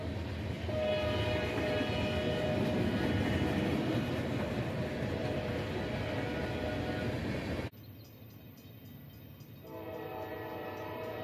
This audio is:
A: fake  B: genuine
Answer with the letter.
B